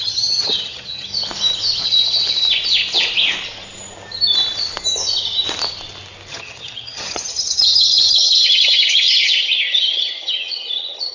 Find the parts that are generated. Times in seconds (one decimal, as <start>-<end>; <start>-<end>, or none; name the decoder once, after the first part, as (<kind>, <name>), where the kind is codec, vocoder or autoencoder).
0.0-1.1 (vocoder, HiFi-GAN); 6.3-11.1